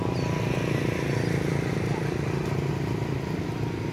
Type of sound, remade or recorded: recorded